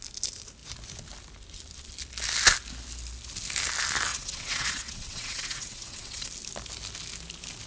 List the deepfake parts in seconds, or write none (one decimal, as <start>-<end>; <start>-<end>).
4.1-6.3